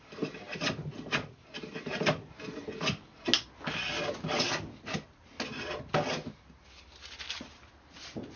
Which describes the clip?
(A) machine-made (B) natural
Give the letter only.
B